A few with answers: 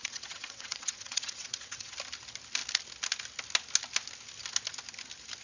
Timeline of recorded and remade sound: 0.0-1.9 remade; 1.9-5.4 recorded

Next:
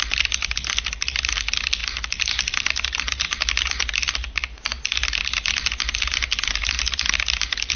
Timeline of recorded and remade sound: 0.0-7.8 recorded